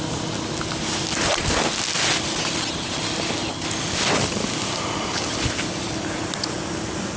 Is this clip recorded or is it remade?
recorded